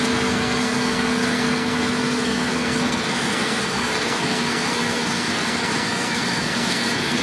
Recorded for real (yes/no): no